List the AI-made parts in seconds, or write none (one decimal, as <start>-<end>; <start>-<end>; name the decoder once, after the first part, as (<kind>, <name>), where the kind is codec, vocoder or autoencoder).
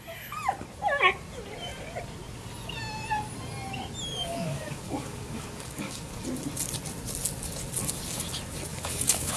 4.1-6.2 (codec, DAC); 8.7-9.4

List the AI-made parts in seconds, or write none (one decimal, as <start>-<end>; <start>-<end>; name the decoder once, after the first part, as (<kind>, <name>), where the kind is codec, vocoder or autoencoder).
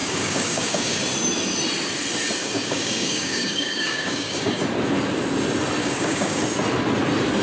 0.0-1.0 (codec, DAC); 2.4-4.6; 5.8-6.4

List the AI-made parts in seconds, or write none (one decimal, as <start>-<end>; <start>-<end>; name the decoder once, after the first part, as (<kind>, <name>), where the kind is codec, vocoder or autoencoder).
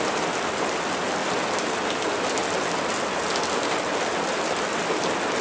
none